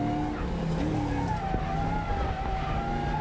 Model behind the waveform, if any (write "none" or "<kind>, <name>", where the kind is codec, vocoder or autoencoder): none